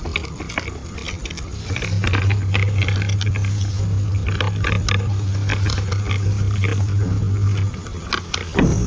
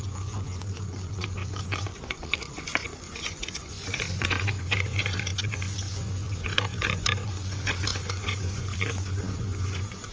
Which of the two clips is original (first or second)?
first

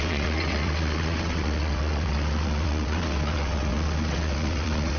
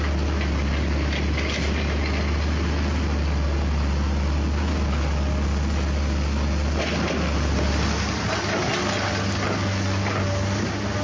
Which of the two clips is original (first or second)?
second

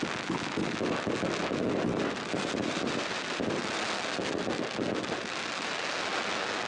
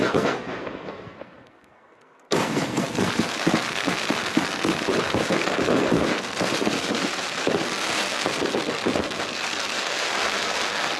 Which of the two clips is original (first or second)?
first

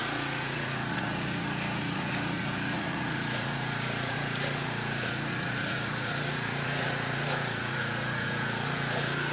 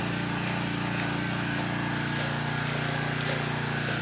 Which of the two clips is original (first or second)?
second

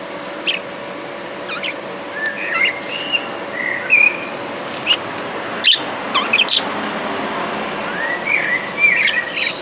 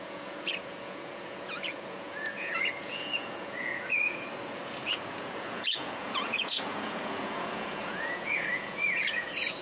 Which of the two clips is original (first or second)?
first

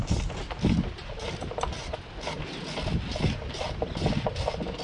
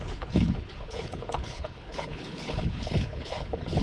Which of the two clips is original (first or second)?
first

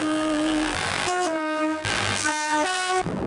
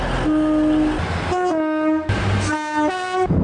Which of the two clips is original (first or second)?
second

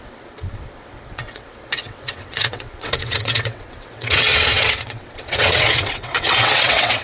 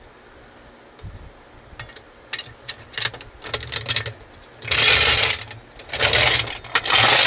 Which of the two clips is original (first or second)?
second